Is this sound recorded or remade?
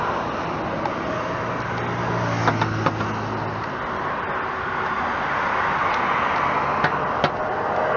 recorded